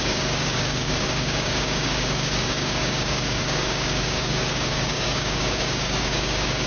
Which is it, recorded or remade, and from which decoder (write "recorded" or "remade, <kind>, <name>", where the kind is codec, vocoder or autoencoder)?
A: remade, codec, DAC